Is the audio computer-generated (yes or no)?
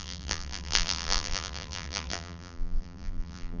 yes